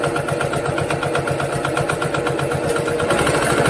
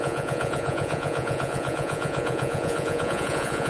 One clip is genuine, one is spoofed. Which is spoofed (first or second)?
second